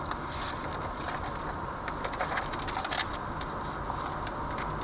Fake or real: real